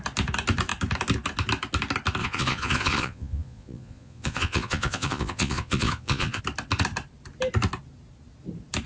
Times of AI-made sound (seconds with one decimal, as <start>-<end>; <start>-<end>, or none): 2.2-6.4